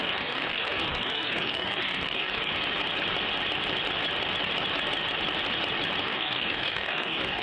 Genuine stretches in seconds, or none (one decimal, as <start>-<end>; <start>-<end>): 2.5-6.0